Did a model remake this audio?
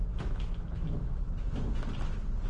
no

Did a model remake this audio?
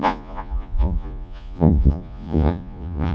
yes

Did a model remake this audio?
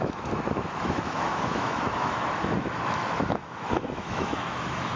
yes